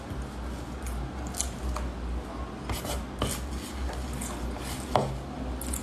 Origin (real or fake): real